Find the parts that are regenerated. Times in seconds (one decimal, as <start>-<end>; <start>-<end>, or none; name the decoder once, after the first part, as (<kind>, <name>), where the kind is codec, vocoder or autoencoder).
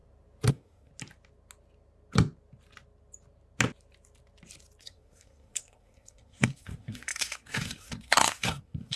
0.5-0.9 (codec, SNAC); 4.8-9.0